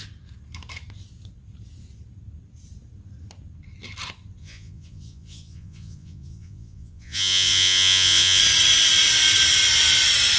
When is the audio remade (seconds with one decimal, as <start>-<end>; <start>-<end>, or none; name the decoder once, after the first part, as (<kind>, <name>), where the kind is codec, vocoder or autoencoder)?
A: 4.4-8.4 (vocoder, Vocos)